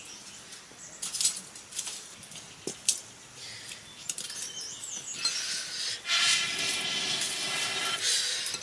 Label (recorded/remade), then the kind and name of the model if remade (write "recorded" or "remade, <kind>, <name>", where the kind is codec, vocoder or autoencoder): recorded